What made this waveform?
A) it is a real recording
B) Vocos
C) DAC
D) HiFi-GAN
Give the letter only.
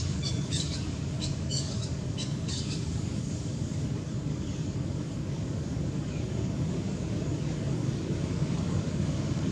C